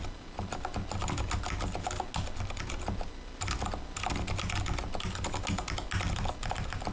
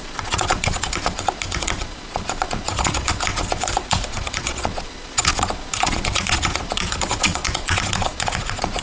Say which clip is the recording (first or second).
first